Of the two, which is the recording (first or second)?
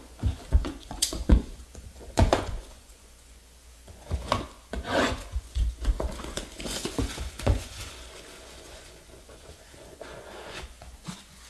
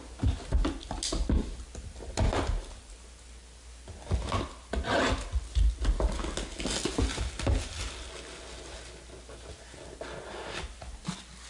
second